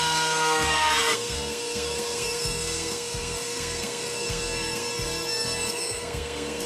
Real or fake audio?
fake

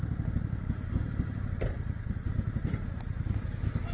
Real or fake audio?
real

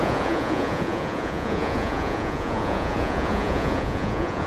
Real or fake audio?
fake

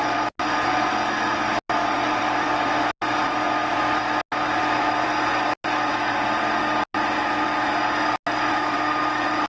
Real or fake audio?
real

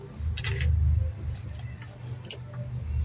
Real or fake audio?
real